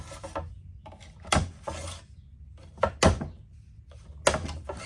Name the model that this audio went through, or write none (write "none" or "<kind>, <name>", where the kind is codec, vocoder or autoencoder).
none